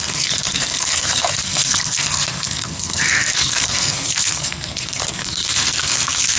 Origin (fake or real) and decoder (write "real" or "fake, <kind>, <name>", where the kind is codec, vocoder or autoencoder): fake, codec, SNAC